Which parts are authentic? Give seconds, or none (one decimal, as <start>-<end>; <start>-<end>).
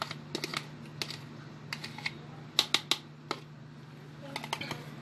0.0-5.0